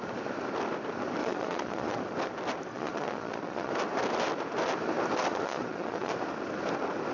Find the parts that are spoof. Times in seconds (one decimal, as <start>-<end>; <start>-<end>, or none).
1.2-2.0; 2.7-3.7; 5.3-6.1